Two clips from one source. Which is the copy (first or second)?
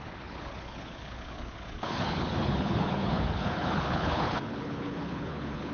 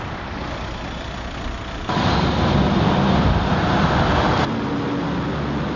first